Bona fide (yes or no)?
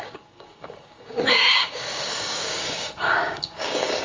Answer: no